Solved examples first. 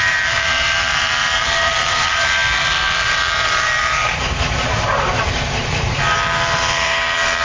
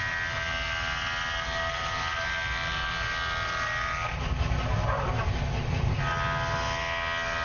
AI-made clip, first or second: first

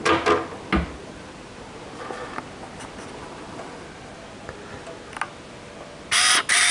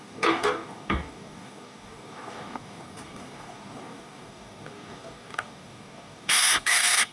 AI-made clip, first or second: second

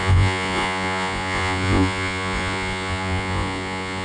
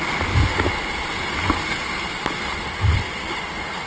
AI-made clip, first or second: first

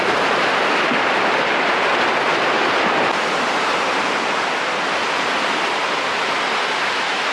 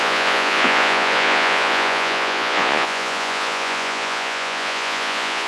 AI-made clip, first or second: second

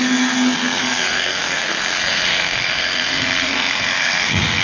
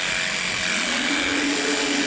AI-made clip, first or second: first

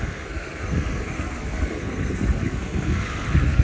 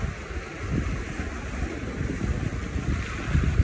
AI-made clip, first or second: first